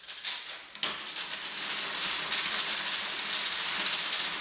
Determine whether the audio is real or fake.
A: real